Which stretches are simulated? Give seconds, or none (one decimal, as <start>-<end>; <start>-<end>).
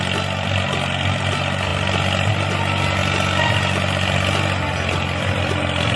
none